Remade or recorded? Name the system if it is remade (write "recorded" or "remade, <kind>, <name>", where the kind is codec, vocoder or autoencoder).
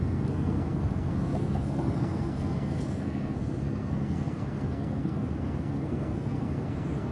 remade, codec, SNAC